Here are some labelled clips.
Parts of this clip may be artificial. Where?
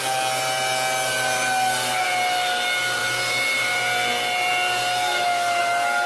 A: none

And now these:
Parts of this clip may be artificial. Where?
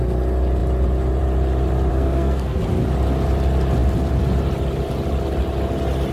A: 1.9-2.6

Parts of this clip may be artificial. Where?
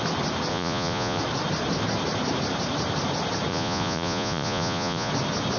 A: 0.5-1.2; 3.5-5.1